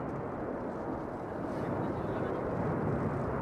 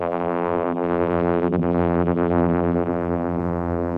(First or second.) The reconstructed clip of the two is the second